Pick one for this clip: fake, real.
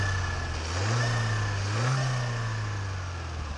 real